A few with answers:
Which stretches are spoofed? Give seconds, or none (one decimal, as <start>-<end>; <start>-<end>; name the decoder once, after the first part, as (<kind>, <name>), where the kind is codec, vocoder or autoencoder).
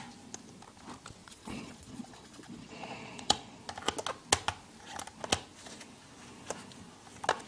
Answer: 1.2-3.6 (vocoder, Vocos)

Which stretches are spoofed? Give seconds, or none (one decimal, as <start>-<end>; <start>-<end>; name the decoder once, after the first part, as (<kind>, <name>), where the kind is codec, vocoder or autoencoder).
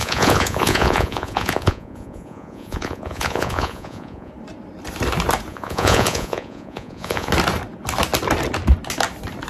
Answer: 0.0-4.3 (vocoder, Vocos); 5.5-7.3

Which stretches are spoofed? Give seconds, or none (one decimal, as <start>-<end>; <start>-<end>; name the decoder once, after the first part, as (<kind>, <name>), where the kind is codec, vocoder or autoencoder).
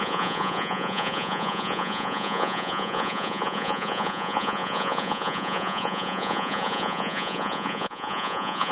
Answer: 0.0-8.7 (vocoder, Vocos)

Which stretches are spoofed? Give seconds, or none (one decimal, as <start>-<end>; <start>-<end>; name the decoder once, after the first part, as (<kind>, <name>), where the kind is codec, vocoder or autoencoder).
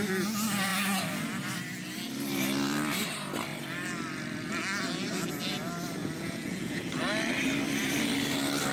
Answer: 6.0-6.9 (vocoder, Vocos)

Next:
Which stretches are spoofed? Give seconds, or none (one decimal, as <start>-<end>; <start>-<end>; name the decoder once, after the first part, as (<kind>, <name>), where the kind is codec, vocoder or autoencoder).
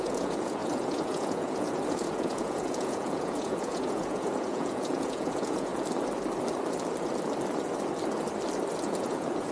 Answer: 0.0-5.7 (vocoder, Vocos); 8.7-9.5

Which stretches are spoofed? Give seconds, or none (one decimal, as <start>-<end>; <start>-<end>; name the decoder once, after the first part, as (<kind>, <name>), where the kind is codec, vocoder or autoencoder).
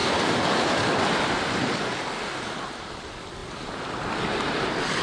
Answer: none